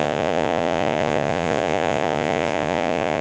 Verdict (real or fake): fake